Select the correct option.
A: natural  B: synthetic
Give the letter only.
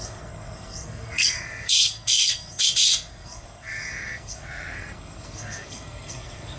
B